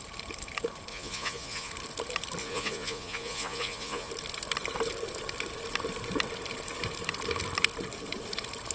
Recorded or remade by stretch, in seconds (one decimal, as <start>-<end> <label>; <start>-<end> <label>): 0.0-0.9 recorded; 0.9-1.7 remade; 1.7-2.4 recorded; 2.4-4.1 remade; 4.1-8.7 recorded

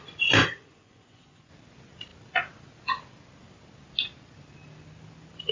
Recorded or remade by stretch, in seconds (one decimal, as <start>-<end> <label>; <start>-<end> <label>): 0.0-0.4 recorded; 0.4-1.5 remade; 1.5-5.5 recorded